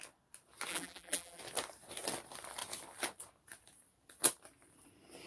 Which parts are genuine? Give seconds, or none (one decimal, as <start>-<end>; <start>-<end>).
0.0-0.7; 1.4-5.3